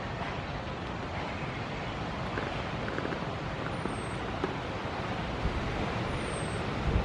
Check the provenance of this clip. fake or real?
real